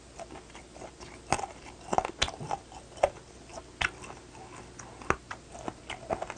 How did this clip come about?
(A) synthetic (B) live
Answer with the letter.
B